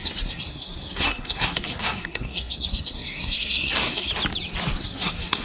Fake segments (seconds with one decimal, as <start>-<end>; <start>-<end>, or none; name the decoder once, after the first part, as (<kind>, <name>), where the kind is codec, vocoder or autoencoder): 0.0-4.1 (codec, SNAC); 4.8-5.4